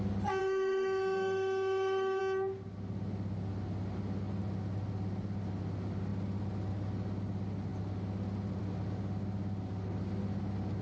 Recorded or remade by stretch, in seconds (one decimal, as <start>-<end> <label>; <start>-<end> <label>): 0.0-0.4 recorded; 0.4-2.2 remade; 2.2-10.8 recorded